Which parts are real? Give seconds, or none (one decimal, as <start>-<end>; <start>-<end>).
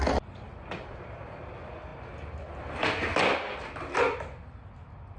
0.0-5.2